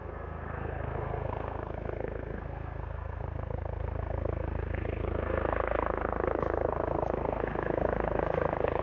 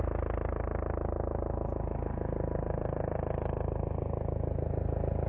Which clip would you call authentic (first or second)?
second